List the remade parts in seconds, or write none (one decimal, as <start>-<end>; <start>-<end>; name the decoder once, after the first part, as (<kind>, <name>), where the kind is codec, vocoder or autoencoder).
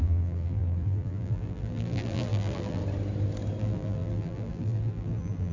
0.0-2.8 (vocoder, BigVGAN v2); 3.6-5.5